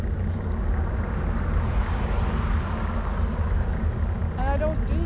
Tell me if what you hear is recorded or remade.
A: recorded